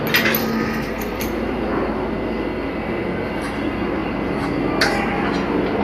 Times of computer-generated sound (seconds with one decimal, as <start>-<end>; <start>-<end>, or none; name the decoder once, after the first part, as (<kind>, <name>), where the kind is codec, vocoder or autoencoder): 0.4-1.2 (codec, SNAC)